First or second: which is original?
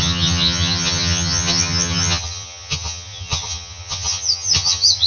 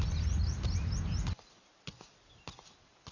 second